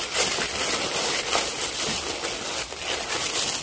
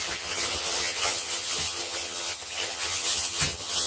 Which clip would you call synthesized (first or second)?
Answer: second